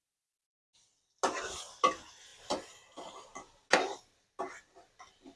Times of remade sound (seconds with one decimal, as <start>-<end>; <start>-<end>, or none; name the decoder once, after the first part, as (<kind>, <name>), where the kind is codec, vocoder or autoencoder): none